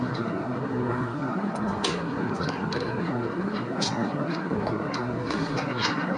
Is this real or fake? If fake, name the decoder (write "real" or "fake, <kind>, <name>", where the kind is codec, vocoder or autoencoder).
fake, codec, SNAC